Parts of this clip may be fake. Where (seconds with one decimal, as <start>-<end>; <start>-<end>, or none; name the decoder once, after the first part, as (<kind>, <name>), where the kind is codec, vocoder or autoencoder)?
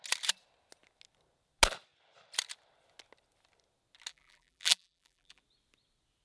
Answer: 4.1-5.4 (vocoder, BigVGAN v2)